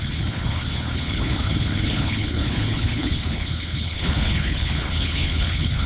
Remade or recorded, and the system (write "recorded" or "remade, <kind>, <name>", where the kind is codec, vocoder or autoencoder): remade, codec, HILCodec